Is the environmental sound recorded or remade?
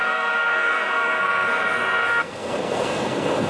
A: remade